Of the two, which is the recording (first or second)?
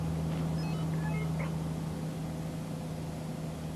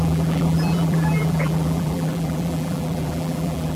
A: first